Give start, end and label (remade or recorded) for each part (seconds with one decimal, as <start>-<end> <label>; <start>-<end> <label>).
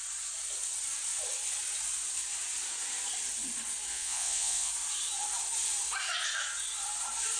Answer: 0.0-3.9 recorded; 3.9-4.7 remade; 4.7-7.4 recorded